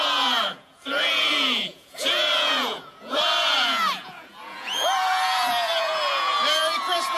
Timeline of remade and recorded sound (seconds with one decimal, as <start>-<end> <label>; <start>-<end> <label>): 0.0-7.2 remade